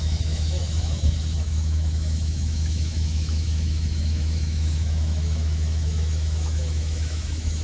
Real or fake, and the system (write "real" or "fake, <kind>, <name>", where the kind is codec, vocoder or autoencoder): fake, autoencoder, DAC-VAE